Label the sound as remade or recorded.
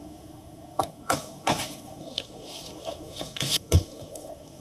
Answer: remade